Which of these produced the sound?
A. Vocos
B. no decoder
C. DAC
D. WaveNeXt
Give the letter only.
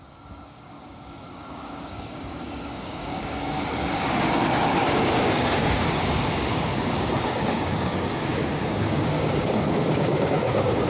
C